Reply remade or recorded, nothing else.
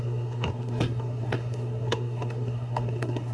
remade